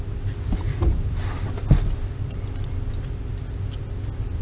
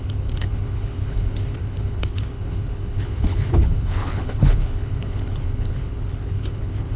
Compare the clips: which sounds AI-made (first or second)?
second